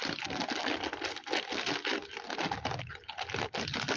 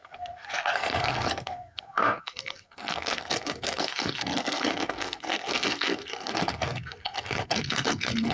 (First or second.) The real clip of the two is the first